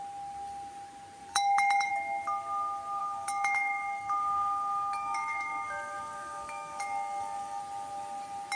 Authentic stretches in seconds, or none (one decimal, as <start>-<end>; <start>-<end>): 0.0-1.2; 1.9-3.0; 7.6-8.6